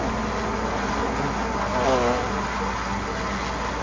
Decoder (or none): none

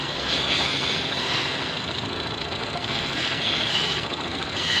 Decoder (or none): codec, SNAC